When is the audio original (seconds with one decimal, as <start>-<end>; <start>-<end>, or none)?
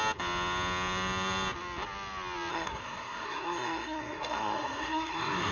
0.0-2.5